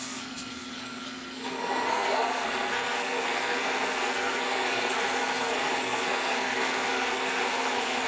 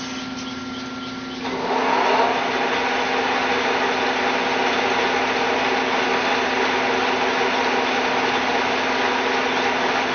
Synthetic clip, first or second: first